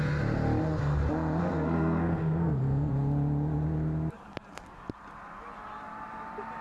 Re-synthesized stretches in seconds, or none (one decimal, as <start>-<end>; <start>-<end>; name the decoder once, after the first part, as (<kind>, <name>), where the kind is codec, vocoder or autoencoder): 1.4-2.9 (codec, SNAC)